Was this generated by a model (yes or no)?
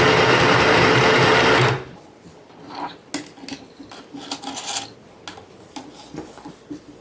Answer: no